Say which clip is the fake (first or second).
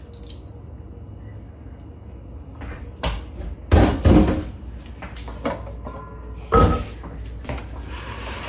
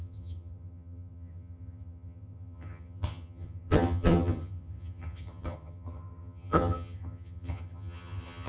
second